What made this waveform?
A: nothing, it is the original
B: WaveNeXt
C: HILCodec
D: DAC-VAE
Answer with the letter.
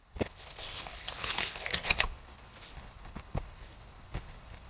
C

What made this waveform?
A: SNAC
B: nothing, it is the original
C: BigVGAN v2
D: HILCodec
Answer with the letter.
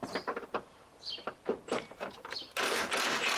C